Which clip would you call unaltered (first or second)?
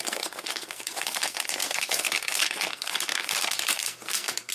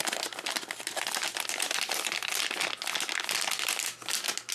second